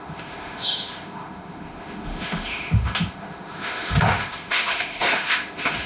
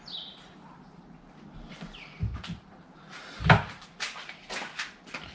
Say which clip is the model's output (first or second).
first